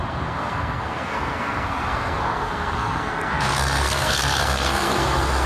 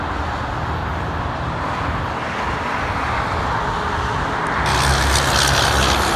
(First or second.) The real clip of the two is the second